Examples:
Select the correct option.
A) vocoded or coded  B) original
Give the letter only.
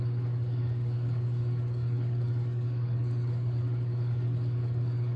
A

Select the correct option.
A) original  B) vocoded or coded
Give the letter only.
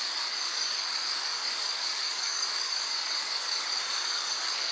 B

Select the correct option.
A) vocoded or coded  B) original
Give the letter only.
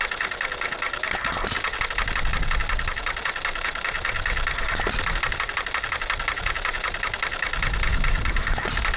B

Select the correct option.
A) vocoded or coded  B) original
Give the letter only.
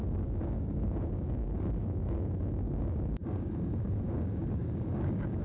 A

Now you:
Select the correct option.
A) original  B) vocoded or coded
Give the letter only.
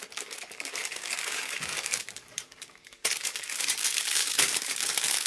B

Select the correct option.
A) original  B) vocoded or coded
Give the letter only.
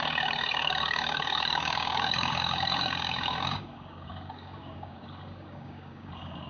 B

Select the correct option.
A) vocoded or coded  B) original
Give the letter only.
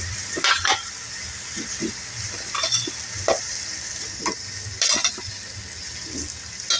B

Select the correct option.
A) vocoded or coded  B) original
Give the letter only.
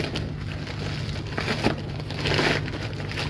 B